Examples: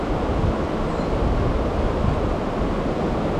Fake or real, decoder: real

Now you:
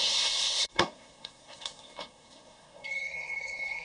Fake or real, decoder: fake, codec, SNAC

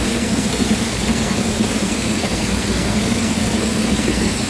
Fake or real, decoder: fake, codec, SNAC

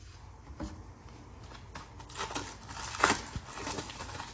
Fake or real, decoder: real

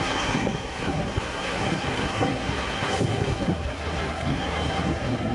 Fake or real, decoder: fake, codec, SNAC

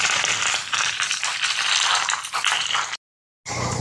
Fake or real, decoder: real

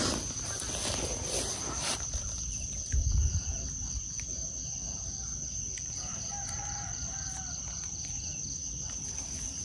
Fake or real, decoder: real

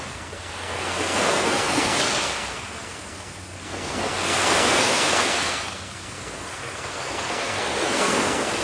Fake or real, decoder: fake, codec, SNAC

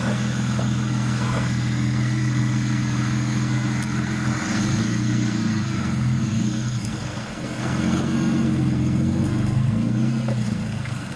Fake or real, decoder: fake, codec, SNAC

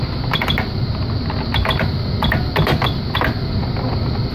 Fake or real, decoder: real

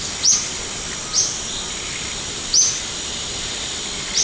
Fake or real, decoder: real